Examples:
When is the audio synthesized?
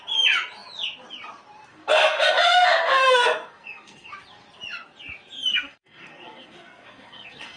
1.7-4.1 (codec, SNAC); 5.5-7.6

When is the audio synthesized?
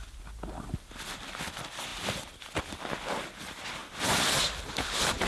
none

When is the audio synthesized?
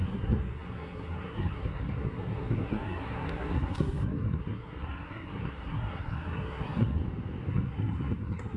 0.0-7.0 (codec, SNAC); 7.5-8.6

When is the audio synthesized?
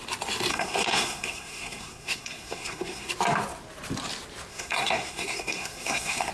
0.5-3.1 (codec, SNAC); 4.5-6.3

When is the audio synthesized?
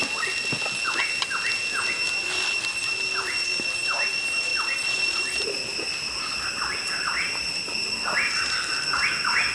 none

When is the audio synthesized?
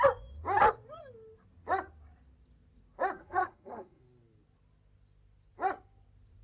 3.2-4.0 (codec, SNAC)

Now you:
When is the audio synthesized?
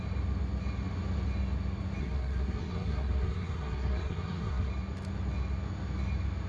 2.0-4.7 (codec, SNAC)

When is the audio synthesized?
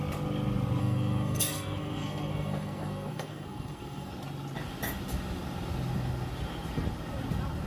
0.8-4.1 (codec, SNAC)